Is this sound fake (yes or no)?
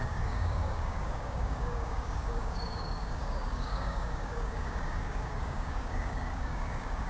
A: yes